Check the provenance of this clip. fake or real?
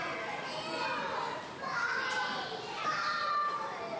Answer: real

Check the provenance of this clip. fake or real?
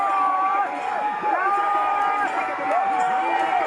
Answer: real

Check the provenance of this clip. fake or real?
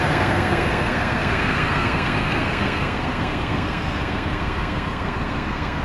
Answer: fake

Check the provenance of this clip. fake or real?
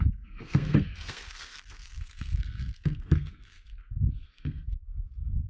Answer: fake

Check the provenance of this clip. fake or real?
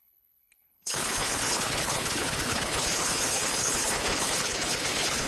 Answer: fake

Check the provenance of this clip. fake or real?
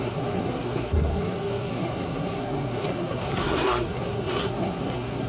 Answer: fake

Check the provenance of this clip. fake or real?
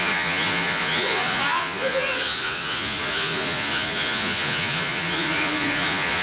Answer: fake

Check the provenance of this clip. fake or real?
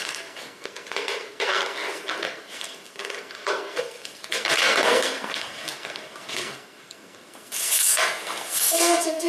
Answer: fake